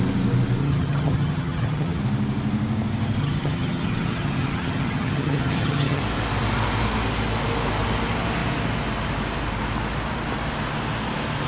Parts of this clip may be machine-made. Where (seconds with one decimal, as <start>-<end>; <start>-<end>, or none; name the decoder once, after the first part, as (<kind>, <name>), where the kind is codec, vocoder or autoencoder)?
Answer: 0.6-2.0 (vocoder, HiFi-GAN); 3.2-6.0